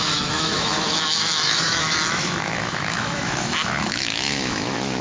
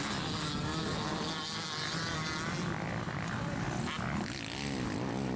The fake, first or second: first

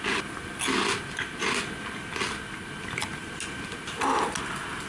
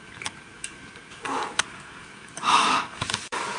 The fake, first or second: second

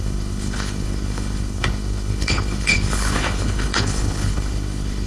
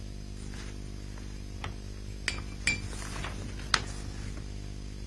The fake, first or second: first